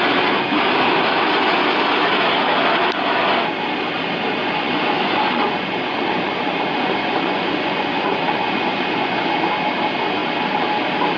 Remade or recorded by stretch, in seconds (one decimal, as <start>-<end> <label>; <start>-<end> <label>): 0.0-4.4 recorded; 4.4-9.4 remade; 9.4-11.2 recorded